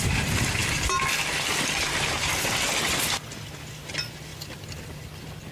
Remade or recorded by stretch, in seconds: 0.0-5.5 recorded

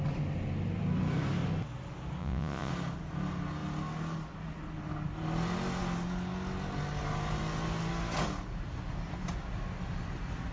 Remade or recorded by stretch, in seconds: 0.0-2.2 recorded; 2.2-2.7 remade; 2.7-10.5 recorded

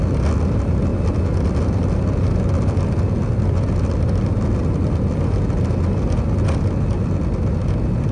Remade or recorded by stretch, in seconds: 0.0-8.1 recorded

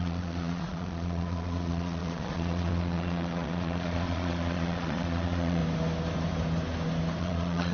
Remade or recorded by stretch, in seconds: 0.0-5.6 remade; 5.6-7.2 recorded; 7.2-7.7 remade

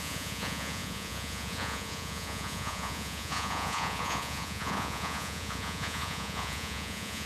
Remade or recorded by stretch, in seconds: 0.0-7.3 remade